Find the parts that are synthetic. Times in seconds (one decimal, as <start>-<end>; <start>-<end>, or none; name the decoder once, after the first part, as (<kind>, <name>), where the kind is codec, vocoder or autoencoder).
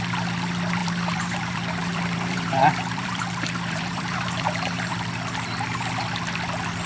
0.8-4.9 (vocoder, BigVGAN v2)